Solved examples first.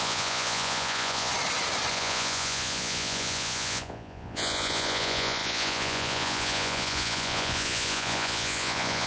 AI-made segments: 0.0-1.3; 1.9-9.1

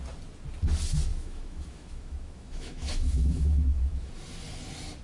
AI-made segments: 1.1-4.1

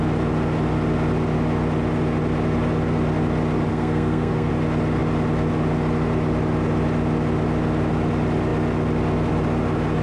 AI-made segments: 3.7-4.5